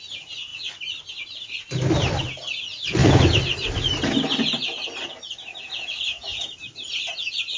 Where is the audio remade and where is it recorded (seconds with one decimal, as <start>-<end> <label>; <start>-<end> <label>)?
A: 0.0-6.3 recorded; 6.3-7.0 remade; 7.0-7.6 recorded